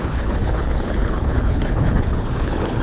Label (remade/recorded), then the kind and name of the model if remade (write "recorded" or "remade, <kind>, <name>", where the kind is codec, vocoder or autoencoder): remade, codec, HILCodec